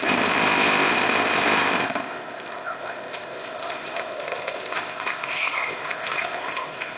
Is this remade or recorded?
remade